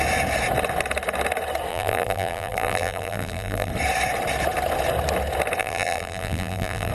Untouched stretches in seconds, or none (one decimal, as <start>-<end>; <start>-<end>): 0.0-1.7; 3.7-5.6